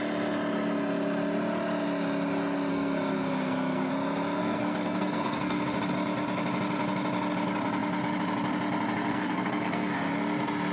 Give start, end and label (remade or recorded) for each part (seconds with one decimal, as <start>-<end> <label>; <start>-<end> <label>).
0.0-2.7 recorded; 2.7-3.9 remade; 3.9-4.4 recorded; 4.4-5.6 remade; 5.6-9.1 recorded; 9.1-9.9 remade; 9.9-10.7 recorded